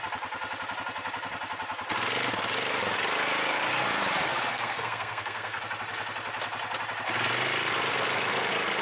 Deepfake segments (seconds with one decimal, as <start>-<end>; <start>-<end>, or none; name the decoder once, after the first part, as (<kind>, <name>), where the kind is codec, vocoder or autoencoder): 4.5-5.6 (codec, SNAC)